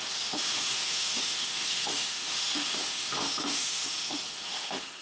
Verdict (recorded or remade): remade